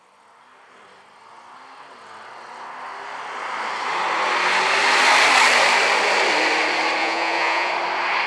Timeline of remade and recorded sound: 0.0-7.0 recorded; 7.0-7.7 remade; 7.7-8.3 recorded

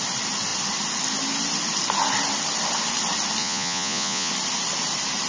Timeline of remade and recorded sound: 0.0-3.4 recorded; 3.4-4.3 remade; 4.3-5.3 recorded

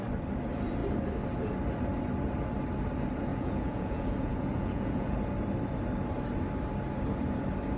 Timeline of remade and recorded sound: 0.0-3.3 recorded; 3.3-5.2 remade; 5.2-7.8 recorded

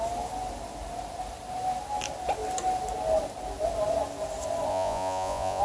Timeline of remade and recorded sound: 0.0-4.7 recorded; 4.7-5.6 remade

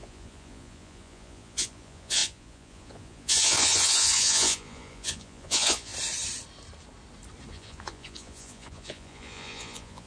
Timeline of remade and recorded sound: 0.0-5.9 remade; 5.9-7.5 recorded; 7.5-10.1 remade